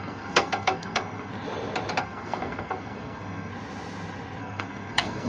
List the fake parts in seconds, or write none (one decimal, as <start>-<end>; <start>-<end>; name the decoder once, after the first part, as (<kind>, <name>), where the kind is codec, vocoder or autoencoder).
0.0-1.3 (codec, SNAC); 2.0-3.5; 4.4-5.3